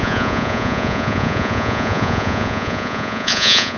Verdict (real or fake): fake